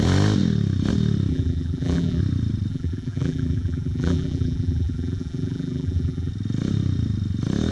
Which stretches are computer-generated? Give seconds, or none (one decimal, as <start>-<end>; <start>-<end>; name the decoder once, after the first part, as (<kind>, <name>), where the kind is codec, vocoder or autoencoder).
1.3-2.2 (vocoder, BigVGAN v2); 2.7-6.3

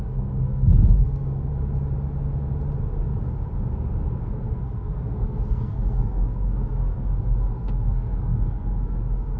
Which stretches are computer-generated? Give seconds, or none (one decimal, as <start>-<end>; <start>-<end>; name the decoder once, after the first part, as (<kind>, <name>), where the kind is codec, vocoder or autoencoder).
0.0-1.5 (codec, SNAC); 4.2-9.4

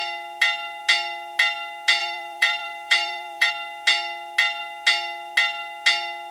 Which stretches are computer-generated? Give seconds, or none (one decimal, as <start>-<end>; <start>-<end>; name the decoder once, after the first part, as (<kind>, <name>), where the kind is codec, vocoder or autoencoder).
2.0-3.5 (vocoder, BigVGAN v2)

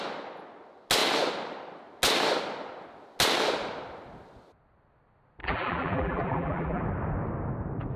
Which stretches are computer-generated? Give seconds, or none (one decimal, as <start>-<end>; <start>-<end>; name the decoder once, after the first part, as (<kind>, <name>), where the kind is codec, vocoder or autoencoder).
5.4-6.8 (vocoder, BigVGAN v2)

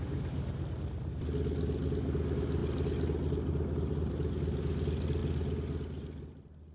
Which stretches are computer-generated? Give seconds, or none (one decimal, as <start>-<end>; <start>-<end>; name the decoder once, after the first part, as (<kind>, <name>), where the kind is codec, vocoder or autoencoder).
none

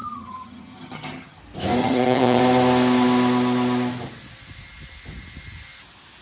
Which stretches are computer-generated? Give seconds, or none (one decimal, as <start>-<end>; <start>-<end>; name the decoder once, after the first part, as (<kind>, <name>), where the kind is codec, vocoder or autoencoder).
0.0-1.4 (vocoder, HiFi-GAN); 1.8-2.4